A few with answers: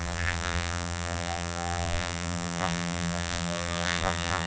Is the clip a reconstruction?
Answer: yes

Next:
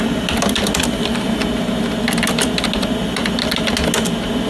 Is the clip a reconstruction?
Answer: no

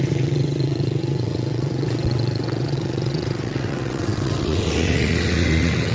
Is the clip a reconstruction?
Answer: yes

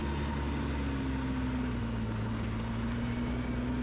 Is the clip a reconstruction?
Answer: no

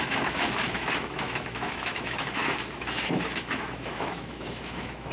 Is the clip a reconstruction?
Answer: yes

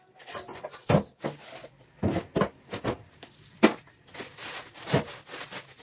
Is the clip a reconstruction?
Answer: no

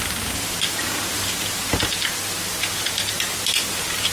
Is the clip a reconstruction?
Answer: no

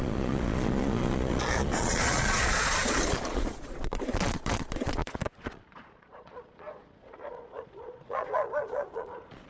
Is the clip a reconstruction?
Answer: yes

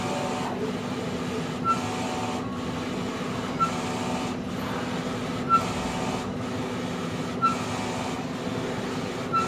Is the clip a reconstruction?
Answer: no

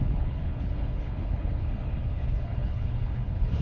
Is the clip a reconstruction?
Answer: yes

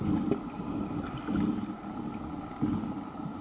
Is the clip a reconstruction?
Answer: no